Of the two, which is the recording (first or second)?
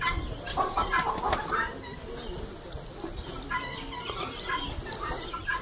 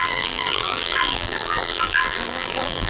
first